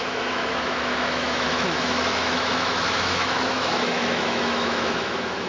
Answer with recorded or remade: remade